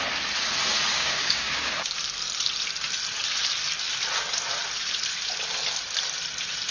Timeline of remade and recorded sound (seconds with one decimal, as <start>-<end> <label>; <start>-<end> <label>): 0.0-0.9 recorded; 0.9-1.9 remade; 1.9-6.7 recorded